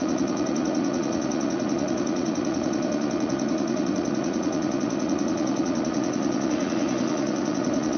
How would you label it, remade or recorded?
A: remade